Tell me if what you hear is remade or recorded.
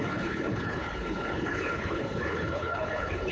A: remade